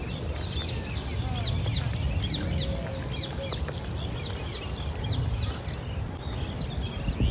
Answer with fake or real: real